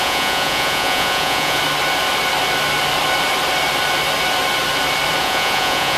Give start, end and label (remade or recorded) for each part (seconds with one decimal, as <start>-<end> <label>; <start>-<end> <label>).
0.0-1.6 remade; 1.6-5.2 recorded; 5.2-6.0 remade